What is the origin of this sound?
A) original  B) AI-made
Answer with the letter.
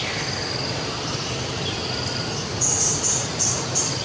A